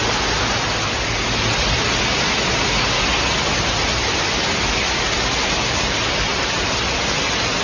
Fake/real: real